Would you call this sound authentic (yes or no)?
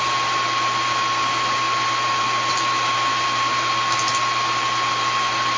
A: yes